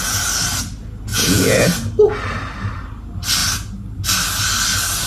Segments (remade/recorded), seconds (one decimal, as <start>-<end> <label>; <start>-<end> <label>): 0.0-1.1 recorded; 1.1-1.6 remade; 1.6-5.1 recorded